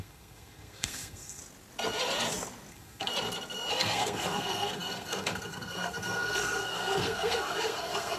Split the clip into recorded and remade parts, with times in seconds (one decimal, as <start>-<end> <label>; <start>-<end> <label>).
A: 0.0-1.4 remade; 1.4-2.7 recorded; 2.7-3.1 remade; 3.1-3.7 recorded; 3.7-8.2 remade